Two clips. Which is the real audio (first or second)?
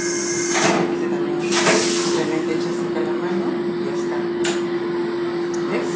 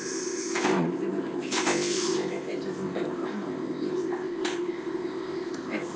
first